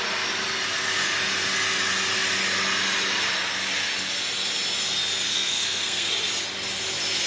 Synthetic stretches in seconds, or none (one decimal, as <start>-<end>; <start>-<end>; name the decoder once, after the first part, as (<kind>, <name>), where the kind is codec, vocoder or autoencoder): 5.3-6.1 (codec, SNAC)